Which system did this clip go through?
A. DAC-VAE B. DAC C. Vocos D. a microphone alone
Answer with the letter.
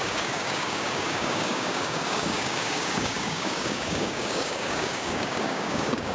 B